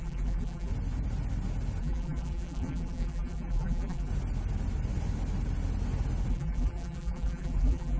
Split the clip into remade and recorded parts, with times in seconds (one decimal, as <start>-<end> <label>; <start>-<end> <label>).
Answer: 0.0-0.7 remade; 0.7-1.8 recorded; 1.8-4.1 remade; 4.1-6.3 recorded; 6.3-8.0 remade